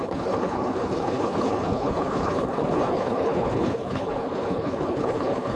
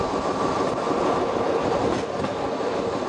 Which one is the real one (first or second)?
second